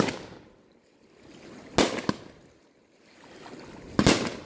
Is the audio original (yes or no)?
yes